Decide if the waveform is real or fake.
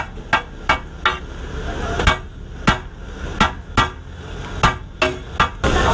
real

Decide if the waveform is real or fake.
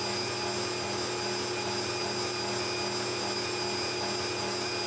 real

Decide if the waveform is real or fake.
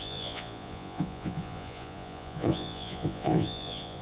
fake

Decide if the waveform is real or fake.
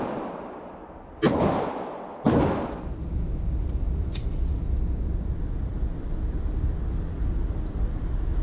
real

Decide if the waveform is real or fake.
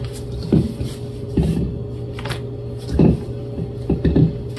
real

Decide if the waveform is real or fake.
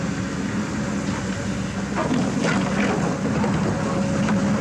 real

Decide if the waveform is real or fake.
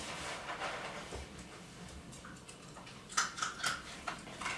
real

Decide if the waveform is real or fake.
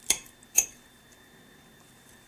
fake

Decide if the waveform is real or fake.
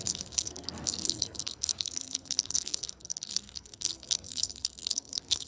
fake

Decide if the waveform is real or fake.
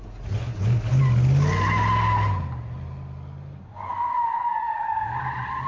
real